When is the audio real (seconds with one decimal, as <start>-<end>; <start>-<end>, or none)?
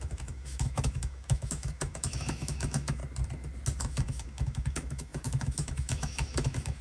3.0-3.8